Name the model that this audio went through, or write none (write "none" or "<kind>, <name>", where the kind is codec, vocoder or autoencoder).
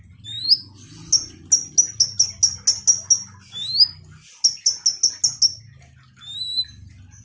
none